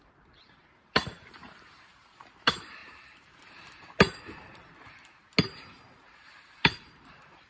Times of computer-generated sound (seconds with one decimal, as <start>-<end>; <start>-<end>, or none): 0.0-5.2; 6.1-7.5